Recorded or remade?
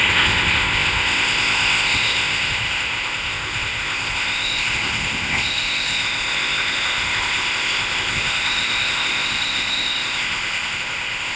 remade